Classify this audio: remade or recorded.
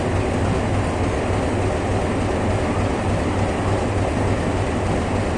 recorded